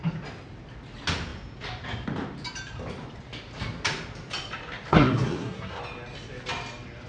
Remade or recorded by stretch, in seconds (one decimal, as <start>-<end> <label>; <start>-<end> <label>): 0.0-4.9 recorded; 4.9-5.8 remade; 5.8-7.1 recorded